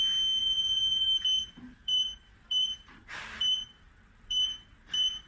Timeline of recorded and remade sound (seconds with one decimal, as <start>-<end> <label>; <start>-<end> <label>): 0.0-0.4 recorded; 0.4-1.2 remade; 1.2-1.8 recorded; 1.8-5.3 remade